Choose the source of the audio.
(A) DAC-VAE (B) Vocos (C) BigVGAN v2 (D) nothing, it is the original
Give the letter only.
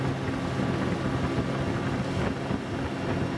D